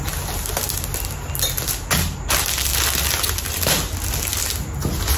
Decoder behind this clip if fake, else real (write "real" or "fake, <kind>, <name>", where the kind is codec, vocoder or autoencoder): real